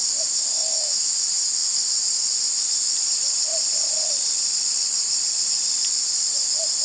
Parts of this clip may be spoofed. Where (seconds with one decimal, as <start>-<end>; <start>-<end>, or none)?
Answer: 0.5-1.1